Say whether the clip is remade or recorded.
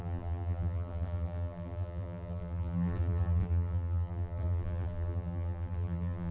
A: remade